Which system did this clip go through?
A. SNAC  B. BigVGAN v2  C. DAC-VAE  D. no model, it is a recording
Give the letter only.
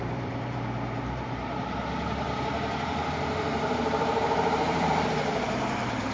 B